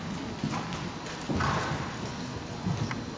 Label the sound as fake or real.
real